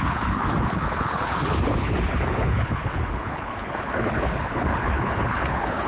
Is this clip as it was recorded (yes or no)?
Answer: no